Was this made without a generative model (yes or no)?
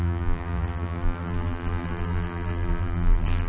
no